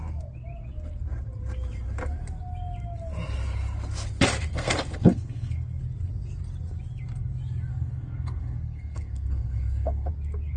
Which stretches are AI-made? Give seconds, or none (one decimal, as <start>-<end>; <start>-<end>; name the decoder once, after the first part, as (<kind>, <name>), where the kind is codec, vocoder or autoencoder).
4.5-5.8 (codec, SNAC); 7.7-10.1